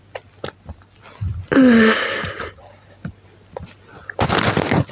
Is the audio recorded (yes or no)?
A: yes